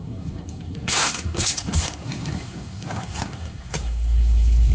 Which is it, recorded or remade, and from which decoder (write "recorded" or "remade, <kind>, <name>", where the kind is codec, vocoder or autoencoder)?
remade, codec, SNAC